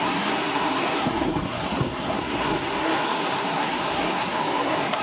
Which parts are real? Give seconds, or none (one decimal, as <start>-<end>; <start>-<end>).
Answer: none